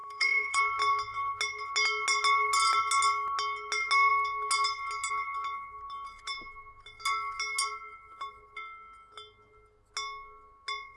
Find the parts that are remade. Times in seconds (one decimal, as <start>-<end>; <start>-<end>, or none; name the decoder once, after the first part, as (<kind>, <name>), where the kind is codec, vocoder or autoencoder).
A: 0.0-0.6 (codec, SNAC)